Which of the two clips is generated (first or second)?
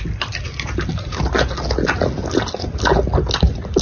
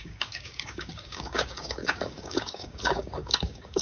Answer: second